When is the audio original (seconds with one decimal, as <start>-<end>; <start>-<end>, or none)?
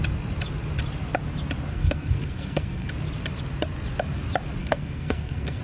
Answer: 0.0-1.7; 2.9-4.6